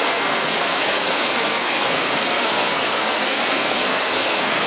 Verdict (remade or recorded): remade